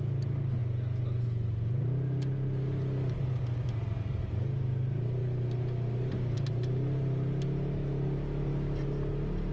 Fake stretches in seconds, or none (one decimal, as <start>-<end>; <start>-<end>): none